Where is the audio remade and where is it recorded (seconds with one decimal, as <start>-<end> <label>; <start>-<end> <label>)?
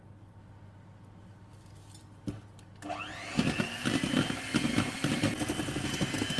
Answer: 0.0-6.4 recorded